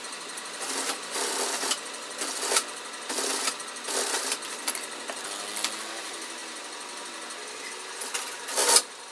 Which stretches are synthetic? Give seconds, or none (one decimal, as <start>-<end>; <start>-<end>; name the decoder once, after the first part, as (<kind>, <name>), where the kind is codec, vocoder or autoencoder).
none